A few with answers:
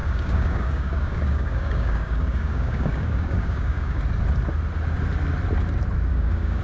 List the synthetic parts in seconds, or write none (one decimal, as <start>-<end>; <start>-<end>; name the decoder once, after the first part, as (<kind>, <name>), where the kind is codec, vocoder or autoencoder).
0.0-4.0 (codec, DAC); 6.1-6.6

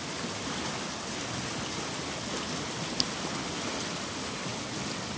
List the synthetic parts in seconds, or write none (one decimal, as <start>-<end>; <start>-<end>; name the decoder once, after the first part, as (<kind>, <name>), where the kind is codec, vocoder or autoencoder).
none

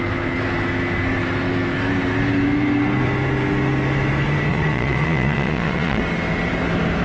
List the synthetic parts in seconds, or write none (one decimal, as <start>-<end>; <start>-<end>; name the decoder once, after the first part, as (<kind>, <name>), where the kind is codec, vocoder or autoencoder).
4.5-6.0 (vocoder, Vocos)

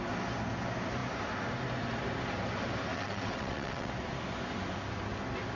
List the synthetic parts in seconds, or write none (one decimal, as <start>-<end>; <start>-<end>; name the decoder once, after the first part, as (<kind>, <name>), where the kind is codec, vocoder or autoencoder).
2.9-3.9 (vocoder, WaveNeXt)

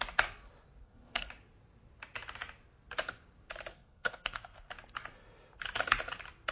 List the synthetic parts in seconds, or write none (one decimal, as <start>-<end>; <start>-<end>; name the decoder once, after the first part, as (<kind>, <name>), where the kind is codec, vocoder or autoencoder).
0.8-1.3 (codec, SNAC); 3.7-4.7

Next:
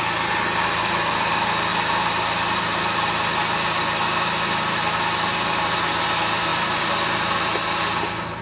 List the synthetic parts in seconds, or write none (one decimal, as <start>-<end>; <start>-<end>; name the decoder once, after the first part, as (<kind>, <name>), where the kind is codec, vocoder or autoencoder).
none

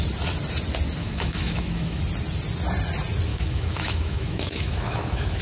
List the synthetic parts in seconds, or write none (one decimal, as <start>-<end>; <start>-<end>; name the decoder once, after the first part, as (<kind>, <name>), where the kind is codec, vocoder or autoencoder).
1.0-2.0 (autoencoder, DAC-VAE); 3.3-5.4

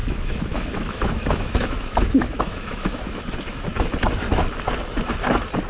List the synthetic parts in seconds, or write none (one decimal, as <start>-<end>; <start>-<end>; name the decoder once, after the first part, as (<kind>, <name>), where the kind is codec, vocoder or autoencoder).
0.0-3.2 (autoencoder, DAC-VAE)